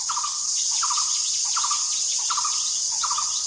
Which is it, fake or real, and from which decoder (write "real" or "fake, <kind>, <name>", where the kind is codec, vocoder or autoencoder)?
real